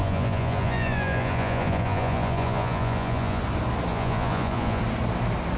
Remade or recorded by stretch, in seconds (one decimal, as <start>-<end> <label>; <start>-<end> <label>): 0.0-3.4 remade; 3.4-3.9 recorded; 3.9-4.8 remade; 4.8-5.6 recorded